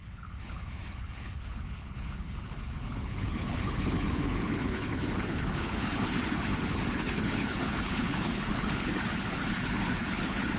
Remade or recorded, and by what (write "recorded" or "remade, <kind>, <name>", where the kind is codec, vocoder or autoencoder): remade, codec, HILCodec